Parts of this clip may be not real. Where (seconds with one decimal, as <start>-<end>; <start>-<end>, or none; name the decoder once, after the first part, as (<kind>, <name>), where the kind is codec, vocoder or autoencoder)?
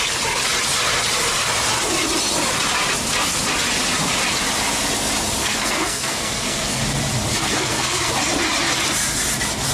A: 5.4-6.8 (codec, SNAC); 7.3-8.1